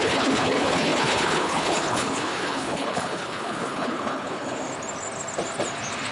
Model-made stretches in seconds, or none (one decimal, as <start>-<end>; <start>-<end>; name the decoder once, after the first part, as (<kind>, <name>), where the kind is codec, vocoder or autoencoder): 0.0-4.6 (codec, HILCodec)